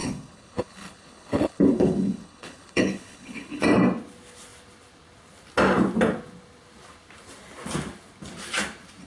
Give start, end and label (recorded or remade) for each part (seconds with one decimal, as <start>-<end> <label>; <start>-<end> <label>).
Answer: 0.0-3.6 remade; 3.6-9.1 recorded